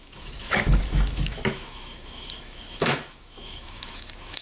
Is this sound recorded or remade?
remade